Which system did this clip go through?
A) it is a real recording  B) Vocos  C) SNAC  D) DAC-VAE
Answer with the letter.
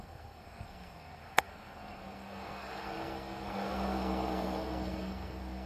C